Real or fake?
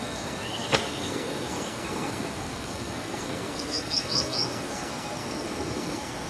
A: fake